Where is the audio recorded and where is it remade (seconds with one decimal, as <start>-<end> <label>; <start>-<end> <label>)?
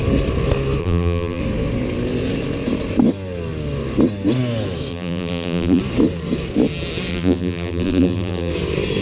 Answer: 0.0-0.8 recorded; 0.8-1.4 remade; 1.4-4.9 recorded; 4.9-5.8 remade; 5.8-7.1 recorded; 7.1-8.5 remade; 8.5-9.0 recorded